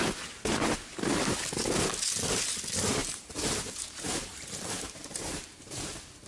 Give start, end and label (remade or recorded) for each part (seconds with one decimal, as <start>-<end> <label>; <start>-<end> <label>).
0.0-3.0 recorded; 3.0-5.4 remade; 5.4-6.3 recorded